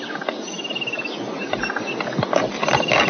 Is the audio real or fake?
real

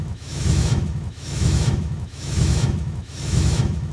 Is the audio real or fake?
fake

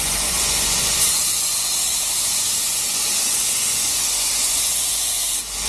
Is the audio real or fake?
fake